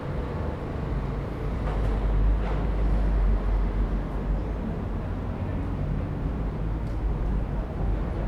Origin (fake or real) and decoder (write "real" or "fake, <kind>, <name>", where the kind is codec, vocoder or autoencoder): real